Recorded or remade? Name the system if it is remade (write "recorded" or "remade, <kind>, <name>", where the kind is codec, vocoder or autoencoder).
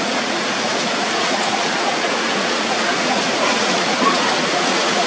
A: remade, vocoder, Vocos